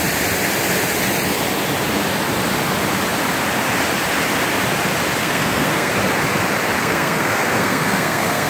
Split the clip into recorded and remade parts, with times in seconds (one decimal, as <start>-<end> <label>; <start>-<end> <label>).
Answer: 0.0-5.2 recorded; 5.2-5.9 remade; 5.9-6.8 recorded; 6.8-8.5 remade